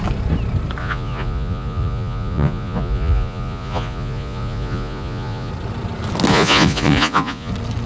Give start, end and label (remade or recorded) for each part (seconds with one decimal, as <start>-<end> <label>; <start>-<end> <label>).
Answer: 0.0-0.8 recorded; 0.8-5.5 remade; 5.5-6.3 recorded; 6.3-7.5 remade; 7.5-7.9 recorded